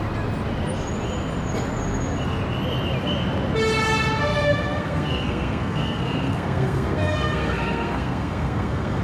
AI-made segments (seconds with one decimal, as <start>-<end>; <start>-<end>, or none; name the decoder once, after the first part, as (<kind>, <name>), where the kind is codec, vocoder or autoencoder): 4.3-9.0 (codec, SNAC)